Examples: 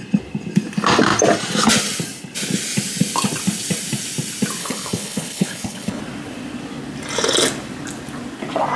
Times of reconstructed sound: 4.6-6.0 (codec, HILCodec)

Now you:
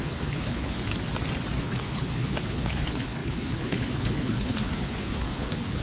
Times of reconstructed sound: 0.0-0.9 (codec, HILCodec); 1.6-5.8

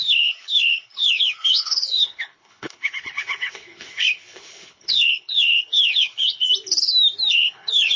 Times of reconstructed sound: 0.0-6.5 (codec, HILCodec); 7.3-8.0

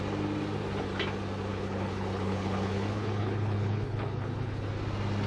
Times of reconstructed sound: 1.5-4.7 (codec, HILCodec)